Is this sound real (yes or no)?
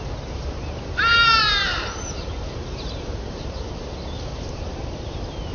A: no